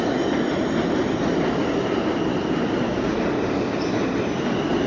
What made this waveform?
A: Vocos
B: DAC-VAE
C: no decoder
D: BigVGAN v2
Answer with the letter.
C